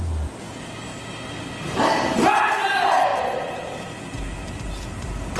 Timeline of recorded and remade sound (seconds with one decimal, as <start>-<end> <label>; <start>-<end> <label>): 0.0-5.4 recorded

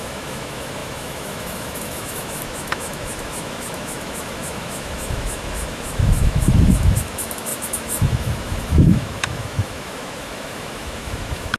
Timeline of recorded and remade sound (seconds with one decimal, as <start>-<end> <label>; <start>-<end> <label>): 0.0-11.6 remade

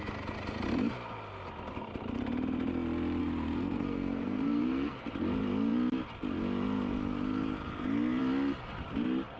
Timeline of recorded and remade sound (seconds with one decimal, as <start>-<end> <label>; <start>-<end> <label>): 0.0-3.2 recorded; 3.2-5.0 remade; 5.0-9.4 recorded